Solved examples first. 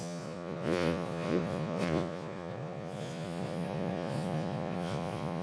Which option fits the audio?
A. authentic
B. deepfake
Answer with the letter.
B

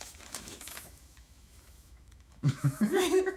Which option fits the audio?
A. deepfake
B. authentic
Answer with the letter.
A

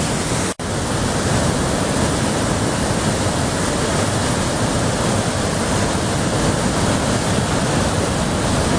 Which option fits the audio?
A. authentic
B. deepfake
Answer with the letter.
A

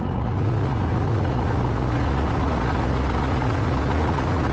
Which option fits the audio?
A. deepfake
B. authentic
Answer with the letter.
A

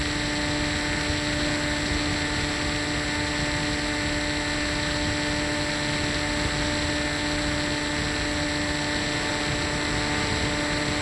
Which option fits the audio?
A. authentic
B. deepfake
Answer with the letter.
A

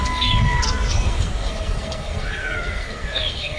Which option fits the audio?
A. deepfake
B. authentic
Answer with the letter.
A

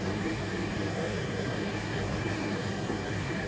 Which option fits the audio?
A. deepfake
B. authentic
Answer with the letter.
A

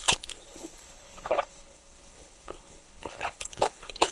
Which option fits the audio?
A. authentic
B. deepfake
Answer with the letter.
B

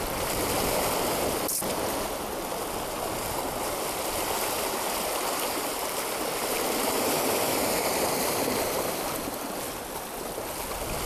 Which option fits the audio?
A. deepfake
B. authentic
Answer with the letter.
A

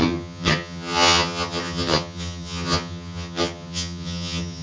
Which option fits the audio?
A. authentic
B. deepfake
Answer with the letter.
B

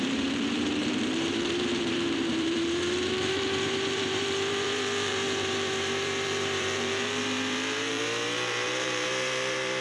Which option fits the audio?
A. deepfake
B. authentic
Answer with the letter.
A